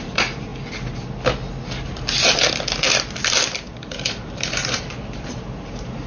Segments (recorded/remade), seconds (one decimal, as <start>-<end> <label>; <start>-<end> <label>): 0.0-3.7 recorded; 3.7-4.8 remade; 4.8-6.1 recorded